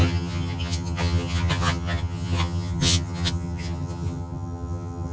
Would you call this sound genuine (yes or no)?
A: no